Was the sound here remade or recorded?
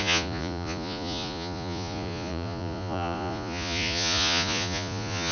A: remade